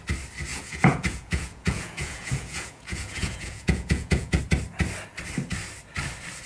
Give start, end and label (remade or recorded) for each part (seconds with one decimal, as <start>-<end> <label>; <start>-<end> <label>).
0.0-0.5 recorded; 0.5-4.4 remade; 4.4-6.5 recorded